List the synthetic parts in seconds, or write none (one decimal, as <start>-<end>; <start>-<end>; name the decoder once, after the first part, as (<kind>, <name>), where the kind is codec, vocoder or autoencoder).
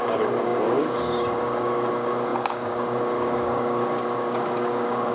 0.0-5.1 (codec, DAC)